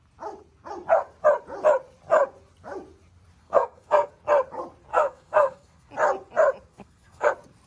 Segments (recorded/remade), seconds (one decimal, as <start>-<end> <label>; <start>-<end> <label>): 0.0-3.4 recorded; 3.4-4.1 remade; 4.1-4.9 recorded; 4.9-5.9 remade; 5.9-6.7 recorded; 6.7-7.3 remade; 7.3-7.7 recorded